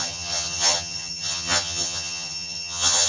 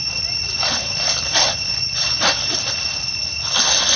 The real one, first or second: second